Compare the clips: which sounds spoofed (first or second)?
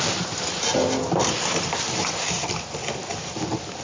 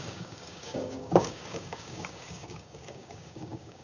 second